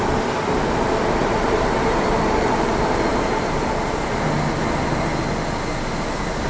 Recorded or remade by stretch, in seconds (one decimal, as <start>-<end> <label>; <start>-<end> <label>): 0.0-1.2 recorded; 1.2-2.7 remade; 2.7-3.1 recorded; 3.1-3.9 remade; 3.9-6.5 recorded